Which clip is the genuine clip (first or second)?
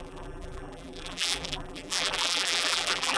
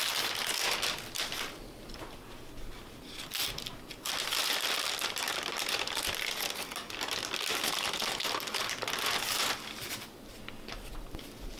second